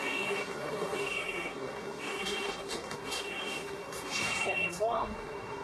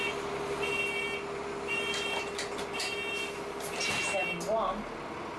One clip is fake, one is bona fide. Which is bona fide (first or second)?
second